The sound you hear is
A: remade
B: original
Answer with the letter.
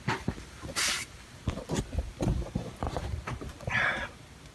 A